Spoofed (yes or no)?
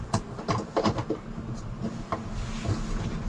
no